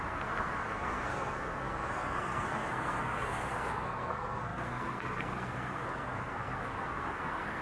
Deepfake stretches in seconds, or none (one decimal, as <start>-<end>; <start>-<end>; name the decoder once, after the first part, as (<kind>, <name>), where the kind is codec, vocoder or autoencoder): 0.0-7.6 (codec, SNAC)